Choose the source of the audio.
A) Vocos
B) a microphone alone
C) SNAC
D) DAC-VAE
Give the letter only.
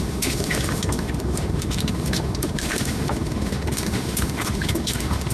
D